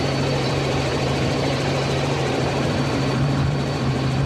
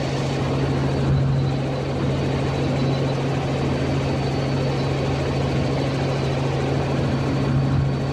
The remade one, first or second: first